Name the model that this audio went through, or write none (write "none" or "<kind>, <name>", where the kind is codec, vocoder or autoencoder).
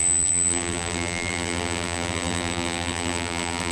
vocoder, BigVGAN v2